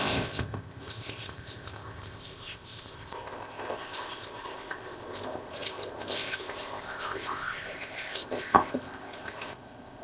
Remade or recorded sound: remade